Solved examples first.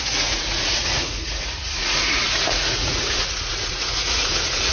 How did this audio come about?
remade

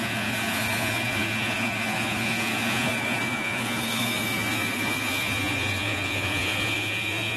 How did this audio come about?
remade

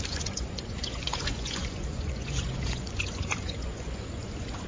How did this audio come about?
remade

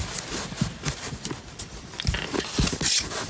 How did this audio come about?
recorded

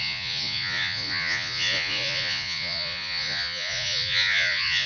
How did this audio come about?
remade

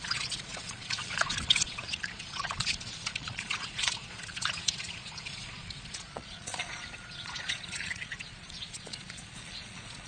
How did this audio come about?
remade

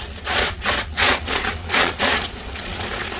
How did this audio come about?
remade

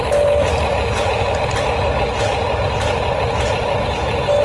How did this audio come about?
recorded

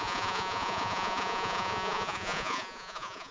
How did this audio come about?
remade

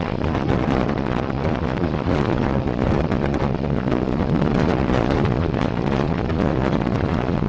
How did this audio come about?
remade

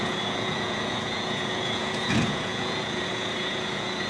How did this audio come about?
remade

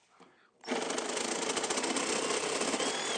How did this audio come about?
recorded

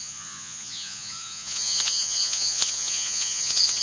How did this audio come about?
remade